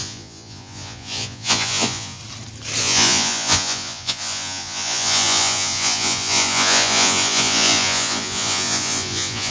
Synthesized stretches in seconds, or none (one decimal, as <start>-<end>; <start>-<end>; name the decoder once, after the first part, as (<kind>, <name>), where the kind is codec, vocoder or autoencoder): 0.0-2.2 (vocoder, Vocos); 2.8-9.5